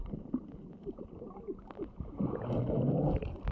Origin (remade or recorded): recorded